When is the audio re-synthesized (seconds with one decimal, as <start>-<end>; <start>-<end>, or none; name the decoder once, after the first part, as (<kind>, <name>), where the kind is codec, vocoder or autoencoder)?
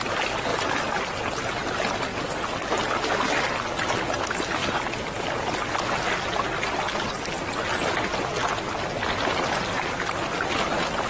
0.5-1.5 (vocoder, BigVGAN v2)